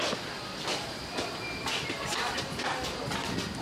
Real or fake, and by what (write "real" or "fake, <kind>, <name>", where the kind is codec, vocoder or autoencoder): real